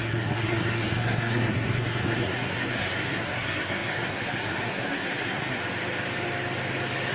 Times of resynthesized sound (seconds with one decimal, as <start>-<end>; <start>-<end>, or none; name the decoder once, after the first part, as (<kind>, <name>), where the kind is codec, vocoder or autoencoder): 0.0-5.6 (codec, SNAC)